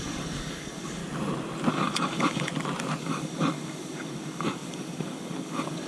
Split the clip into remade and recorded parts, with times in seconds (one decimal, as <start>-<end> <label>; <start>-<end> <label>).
0.0-1.0 remade; 1.0-1.7 recorded; 1.7-2.5 remade; 2.5-3.0 recorded; 3.0-5.9 remade

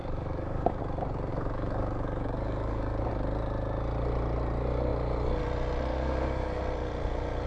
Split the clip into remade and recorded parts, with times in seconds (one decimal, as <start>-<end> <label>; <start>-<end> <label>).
0.0-0.8 remade; 0.8-1.3 recorded; 1.3-3.1 remade; 3.1-5.9 recorded; 5.9-6.6 remade; 6.6-7.5 recorded

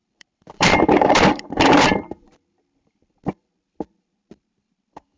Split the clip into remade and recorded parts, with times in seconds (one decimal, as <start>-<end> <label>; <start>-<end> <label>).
0.0-5.2 remade

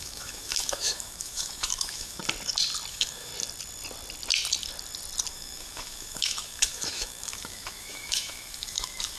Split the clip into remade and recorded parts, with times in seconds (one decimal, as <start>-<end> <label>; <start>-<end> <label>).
0.0-2.2 remade; 2.2-2.9 recorded; 2.9-3.3 remade; 3.3-5.3 recorded; 5.3-9.2 remade

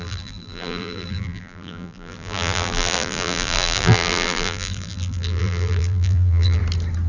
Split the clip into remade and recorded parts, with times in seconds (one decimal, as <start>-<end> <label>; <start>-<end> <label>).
0.0-6.6 remade; 6.6-7.1 recorded

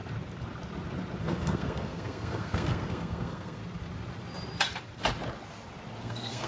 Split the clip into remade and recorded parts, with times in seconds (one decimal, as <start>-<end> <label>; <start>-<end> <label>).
0.0-1.2 recorded; 1.2-3.6 remade; 3.6-6.0 recorded; 6.0-6.5 remade

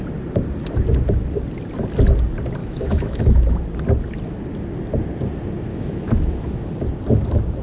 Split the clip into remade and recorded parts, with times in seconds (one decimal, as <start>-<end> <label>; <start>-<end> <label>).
0.0-2.6 recorded; 2.6-3.6 remade; 3.6-5.7 recorded; 5.7-6.6 remade; 6.6-7.6 recorded